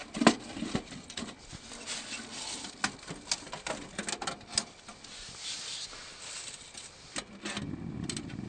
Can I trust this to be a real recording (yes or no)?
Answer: yes